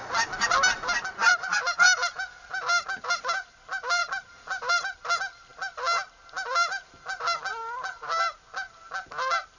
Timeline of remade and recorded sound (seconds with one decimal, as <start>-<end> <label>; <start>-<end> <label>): 0.0-9.6 recorded